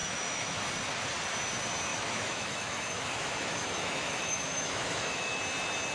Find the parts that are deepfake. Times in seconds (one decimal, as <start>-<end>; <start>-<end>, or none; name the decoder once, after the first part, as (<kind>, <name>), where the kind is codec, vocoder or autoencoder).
0.0-0.6 (autoencoder, DAC-VAE); 1.9-5.4